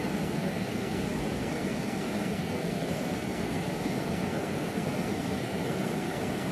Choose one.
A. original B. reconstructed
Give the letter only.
B